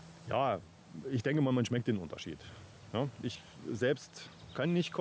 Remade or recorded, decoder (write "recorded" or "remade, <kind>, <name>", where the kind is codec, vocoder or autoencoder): recorded